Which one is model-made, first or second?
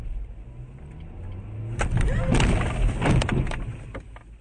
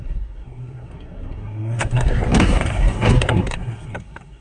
second